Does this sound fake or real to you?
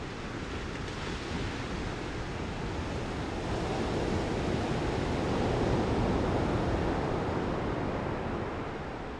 real